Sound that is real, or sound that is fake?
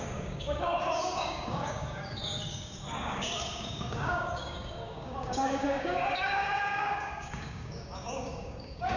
fake